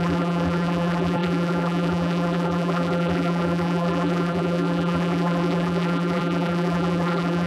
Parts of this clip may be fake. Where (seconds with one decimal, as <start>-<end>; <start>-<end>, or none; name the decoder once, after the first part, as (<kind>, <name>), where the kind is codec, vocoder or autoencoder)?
0.0-7.5 (vocoder, BigVGAN v2)